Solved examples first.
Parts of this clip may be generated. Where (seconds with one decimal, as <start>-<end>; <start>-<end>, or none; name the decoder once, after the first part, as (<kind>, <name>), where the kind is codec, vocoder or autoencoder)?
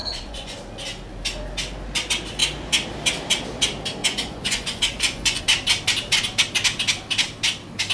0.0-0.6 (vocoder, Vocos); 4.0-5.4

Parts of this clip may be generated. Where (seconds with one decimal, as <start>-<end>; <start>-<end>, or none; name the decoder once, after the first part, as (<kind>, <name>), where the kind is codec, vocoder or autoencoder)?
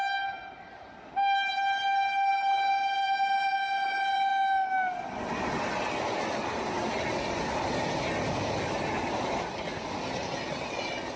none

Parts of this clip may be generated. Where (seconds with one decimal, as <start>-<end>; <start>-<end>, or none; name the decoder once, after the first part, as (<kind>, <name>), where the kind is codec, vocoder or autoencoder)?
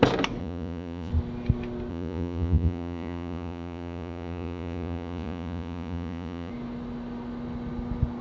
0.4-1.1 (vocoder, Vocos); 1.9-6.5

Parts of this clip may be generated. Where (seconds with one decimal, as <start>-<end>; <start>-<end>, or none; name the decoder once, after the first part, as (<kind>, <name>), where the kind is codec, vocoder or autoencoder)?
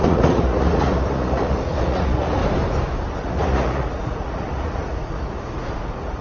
0.0-2.4 (vocoder, Vocos); 3.2-6.2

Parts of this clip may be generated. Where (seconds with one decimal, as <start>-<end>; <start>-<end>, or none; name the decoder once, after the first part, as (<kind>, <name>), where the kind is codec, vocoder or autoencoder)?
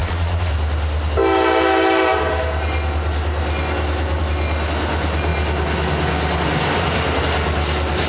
0.0-0.5 (vocoder, Vocos)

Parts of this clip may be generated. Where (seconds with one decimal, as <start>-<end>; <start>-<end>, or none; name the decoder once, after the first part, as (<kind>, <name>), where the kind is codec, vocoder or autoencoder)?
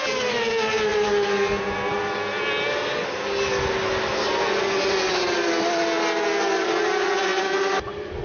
none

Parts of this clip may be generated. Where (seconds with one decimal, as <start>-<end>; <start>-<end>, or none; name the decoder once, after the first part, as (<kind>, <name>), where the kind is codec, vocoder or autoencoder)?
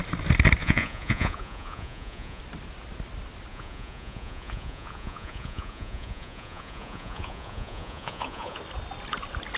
0.6-2.4 (vocoder, Vocos); 3.5-8.6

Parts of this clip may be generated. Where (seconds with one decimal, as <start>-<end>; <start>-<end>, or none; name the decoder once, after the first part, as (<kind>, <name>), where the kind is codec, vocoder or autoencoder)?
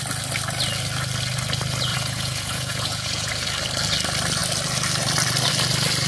1.9-3.3 (vocoder, Vocos)